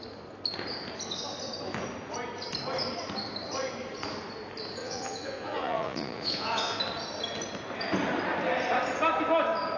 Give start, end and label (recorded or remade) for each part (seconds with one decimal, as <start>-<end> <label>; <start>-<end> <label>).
0.0-4.8 recorded; 4.8-6.8 remade; 6.8-9.8 recorded